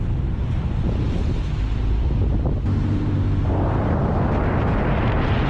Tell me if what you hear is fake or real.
real